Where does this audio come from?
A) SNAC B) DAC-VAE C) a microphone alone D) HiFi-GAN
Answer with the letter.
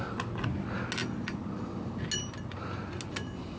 C